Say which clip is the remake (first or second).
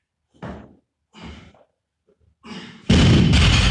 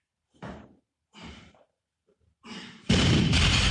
second